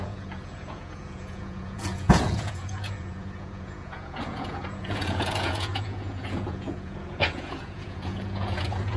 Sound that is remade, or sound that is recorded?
remade